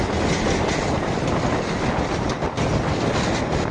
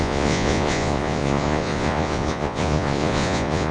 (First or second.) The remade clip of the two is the second